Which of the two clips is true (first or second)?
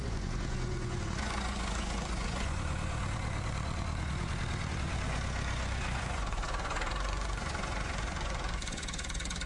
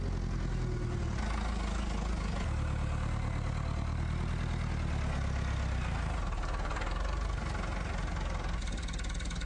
second